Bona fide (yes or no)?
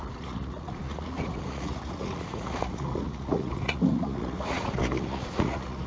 no